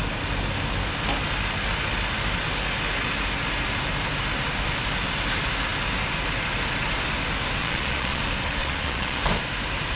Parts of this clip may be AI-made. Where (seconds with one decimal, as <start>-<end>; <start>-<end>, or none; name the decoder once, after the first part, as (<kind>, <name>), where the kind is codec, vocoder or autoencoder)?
7.6-8.2 (vocoder, Vocos); 8.6-9.2